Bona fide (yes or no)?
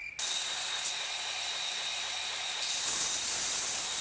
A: yes